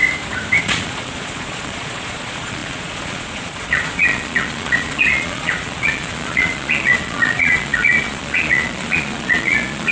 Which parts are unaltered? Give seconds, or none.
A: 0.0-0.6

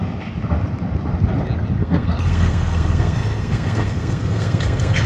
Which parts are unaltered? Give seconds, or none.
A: 0.0-1.8